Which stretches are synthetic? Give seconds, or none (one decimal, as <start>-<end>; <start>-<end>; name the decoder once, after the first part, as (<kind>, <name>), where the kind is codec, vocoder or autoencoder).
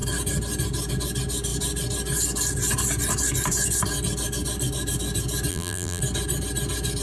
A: 5.5-6.0 (vocoder, BigVGAN v2)